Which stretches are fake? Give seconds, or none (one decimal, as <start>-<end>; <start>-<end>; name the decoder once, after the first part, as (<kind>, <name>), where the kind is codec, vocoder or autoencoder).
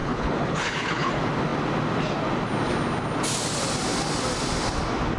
0.0-1.1 (codec, HILCodec)